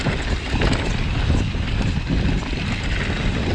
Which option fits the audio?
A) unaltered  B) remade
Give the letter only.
A